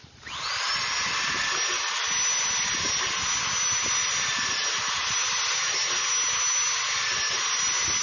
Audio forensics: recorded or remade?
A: recorded